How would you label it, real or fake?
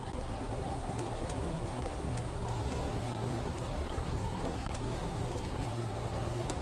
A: fake